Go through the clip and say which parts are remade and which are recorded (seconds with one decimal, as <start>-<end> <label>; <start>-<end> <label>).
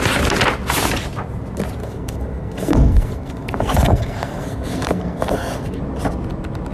0.0-1.8 recorded; 1.8-5.8 remade; 5.8-6.7 recorded